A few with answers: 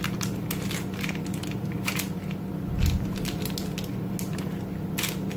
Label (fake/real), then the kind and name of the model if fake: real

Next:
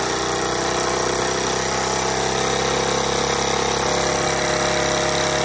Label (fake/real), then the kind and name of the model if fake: real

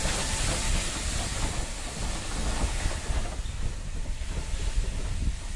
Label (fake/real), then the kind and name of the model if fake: real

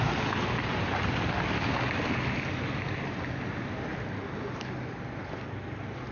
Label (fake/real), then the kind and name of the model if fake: real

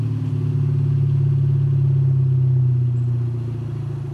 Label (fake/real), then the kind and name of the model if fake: real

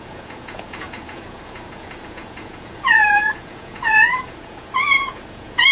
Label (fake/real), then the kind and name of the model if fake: fake, vocoder, Vocos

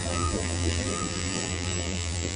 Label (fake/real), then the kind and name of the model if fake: fake, vocoder, BigVGAN v2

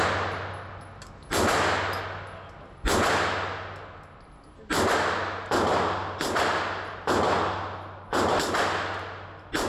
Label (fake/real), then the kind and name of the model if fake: real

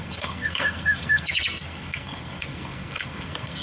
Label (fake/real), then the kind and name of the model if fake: fake, codec, SNAC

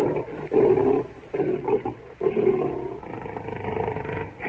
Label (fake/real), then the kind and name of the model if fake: real